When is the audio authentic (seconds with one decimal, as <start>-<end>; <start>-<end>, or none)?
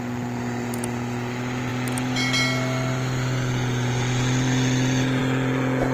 0.0-5.9